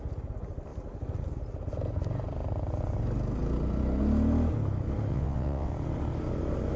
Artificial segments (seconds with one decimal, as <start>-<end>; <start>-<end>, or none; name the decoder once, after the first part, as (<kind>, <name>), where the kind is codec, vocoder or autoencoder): 5.1-5.7 (vocoder, WaveNeXt)

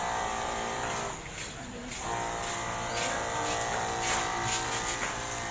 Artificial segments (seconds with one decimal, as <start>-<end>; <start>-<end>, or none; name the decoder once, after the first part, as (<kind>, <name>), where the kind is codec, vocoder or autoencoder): none